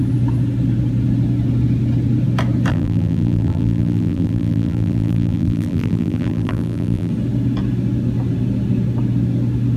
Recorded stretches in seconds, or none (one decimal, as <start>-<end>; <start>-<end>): 0.0-2.7; 7.1-9.8